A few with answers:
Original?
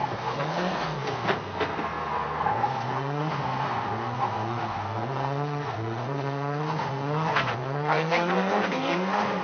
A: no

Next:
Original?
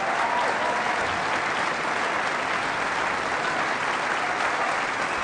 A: yes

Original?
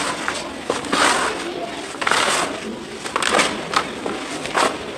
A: yes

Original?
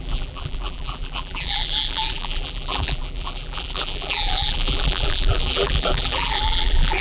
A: no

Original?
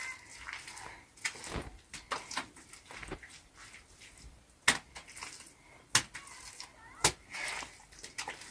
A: yes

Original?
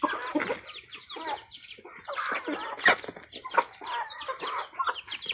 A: yes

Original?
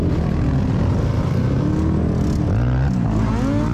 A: yes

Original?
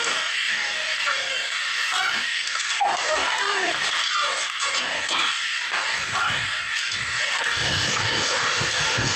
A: no